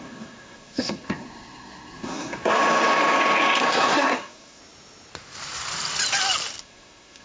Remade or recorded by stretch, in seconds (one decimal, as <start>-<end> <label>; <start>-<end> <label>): 0.0-2.6 remade; 2.6-3.7 recorded; 3.7-4.6 remade; 4.6-6.6 recorded; 6.6-7.2 remade